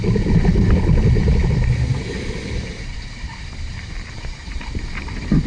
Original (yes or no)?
no